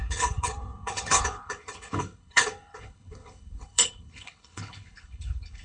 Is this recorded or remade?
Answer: remade